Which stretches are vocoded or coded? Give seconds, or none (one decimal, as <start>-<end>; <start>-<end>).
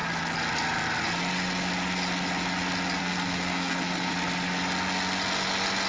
3.0-4.1